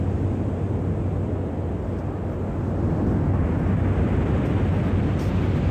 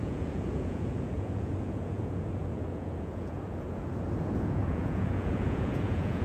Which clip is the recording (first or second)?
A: first